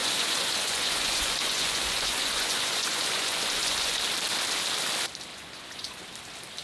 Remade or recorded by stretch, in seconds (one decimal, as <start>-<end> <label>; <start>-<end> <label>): 0.0-4.0 remade; 4.0-5.3 recorded; 5.3-6.0 remade; 6.0-6.6 recorded